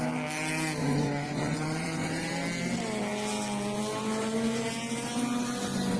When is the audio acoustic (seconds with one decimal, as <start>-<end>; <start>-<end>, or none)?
0.0-0.8; 2.3-6.0